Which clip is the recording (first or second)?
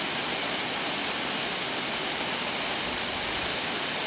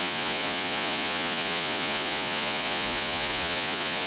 first